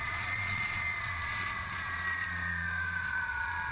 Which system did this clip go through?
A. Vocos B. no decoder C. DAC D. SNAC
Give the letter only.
A